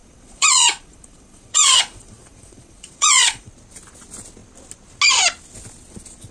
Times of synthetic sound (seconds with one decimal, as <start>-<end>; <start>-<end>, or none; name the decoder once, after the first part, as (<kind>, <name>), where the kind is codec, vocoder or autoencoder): 0.0-3.5 (vocoder, Vocos)